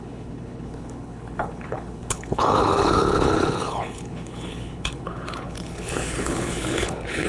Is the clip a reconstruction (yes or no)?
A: yes